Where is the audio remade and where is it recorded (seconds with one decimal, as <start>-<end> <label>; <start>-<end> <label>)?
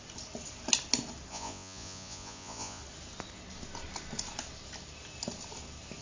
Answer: 0.0-1.3 recorded; 1.3-2.8 remade; 2.8-6.0 recorded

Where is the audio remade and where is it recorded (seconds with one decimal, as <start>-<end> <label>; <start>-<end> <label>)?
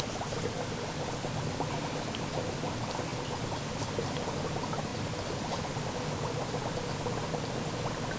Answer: 0.0-8.2 recorded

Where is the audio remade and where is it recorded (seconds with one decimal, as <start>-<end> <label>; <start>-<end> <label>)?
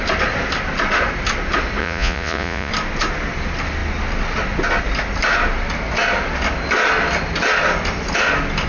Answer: 0.0-1.8 recorded; 1.8-2.7 remade; 2.7-8.7 recorded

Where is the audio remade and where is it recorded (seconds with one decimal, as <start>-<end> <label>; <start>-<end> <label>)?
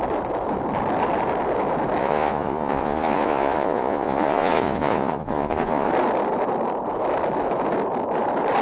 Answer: 0.0-2.0 recorded; 2.0-5.9 remade; 5.9-8.6 recorded